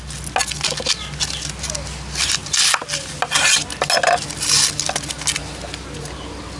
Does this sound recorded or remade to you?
recorded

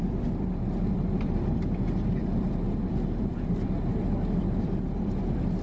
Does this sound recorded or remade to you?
remade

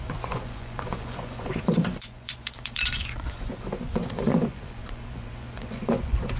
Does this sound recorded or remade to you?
remade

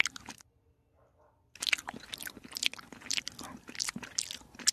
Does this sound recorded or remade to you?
recorded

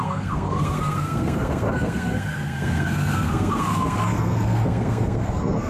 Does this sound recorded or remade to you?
remade